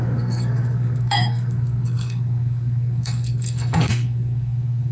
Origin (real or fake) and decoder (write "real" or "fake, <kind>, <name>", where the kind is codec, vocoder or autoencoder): fake, codec, SNAC